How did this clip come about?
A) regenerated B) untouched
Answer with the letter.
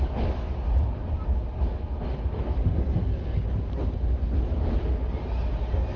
B